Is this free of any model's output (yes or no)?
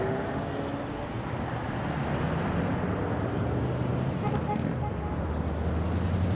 yes